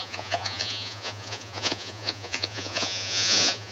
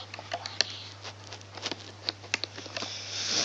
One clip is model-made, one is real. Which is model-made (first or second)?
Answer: first